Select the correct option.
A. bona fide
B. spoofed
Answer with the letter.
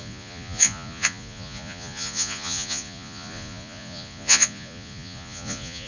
B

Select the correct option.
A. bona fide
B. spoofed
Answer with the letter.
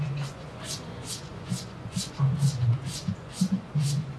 B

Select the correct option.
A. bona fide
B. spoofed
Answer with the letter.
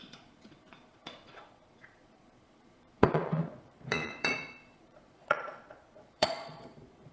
B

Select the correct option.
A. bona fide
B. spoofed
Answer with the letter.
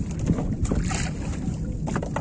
A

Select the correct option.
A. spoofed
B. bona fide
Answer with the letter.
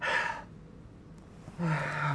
B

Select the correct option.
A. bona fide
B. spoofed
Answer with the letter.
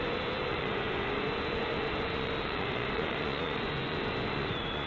B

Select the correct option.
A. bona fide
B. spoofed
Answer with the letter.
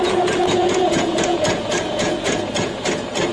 B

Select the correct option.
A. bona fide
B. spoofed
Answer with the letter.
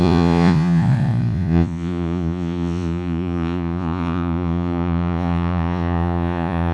B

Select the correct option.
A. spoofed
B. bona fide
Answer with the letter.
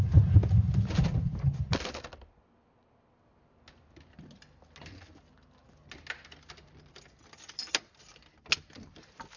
B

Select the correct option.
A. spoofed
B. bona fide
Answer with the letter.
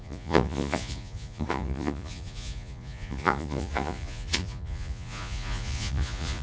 A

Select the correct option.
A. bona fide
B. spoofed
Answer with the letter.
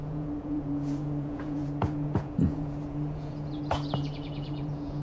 B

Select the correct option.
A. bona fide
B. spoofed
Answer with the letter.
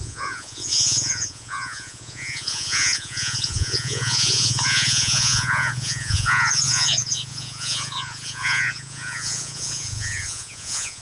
B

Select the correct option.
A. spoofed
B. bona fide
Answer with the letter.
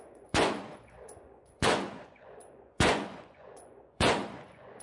A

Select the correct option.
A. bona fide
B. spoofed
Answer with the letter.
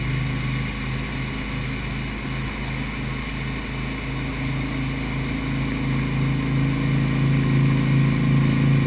A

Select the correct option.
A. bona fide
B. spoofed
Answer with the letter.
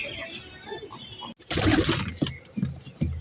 A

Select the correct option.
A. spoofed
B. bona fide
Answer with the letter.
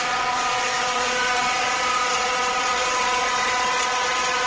A